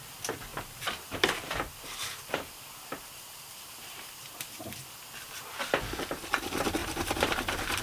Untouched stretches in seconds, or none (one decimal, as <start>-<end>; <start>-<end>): 0.0-0.5; 5.0-6.8